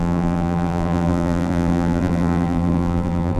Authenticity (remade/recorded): remade